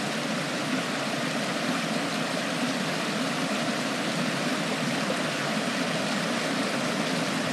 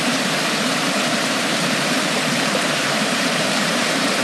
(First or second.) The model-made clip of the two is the second